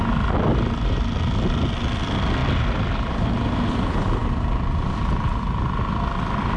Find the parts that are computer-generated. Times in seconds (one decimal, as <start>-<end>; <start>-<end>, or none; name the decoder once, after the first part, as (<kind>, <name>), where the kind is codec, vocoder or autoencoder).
none

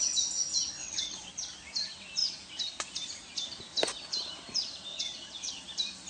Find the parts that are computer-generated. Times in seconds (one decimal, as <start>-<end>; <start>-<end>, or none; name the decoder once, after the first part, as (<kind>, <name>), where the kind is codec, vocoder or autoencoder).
0.8-1.3 (vocoder, WaveNeXt); 4.9-5.5

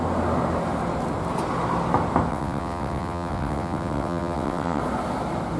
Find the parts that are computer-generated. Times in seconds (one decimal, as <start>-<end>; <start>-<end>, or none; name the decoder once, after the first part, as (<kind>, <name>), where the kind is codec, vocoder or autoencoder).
2.3-4.8 (vocoder, WaveNeXt)

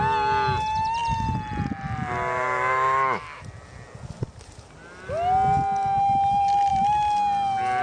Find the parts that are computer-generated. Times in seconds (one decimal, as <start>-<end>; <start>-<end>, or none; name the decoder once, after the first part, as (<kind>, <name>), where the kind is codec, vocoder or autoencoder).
none

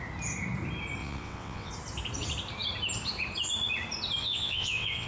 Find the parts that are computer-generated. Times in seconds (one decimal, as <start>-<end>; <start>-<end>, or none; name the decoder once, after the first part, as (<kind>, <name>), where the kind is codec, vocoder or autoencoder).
1.0-1.7 (vocoder, WaveNeXt); 4.2-5.1

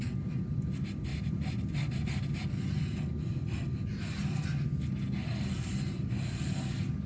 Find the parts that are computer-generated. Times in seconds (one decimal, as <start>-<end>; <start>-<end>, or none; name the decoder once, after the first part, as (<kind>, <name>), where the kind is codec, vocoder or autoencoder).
none